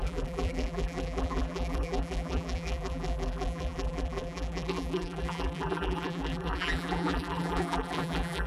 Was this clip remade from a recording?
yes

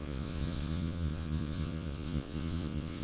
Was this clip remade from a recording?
yes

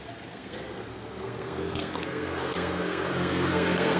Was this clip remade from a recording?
yes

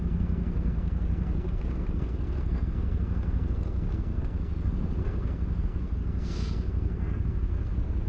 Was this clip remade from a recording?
yes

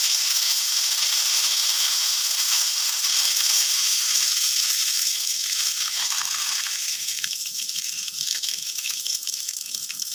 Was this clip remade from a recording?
yes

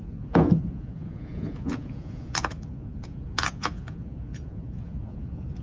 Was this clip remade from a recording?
yes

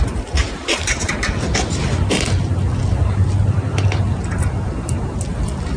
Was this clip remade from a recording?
no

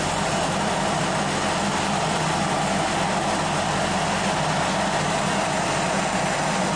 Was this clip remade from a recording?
no